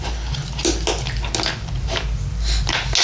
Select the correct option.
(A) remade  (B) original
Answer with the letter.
B